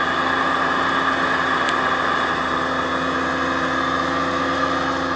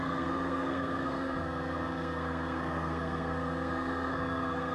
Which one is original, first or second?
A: first